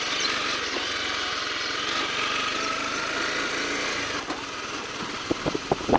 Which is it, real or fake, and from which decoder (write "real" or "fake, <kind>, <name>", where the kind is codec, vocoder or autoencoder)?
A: real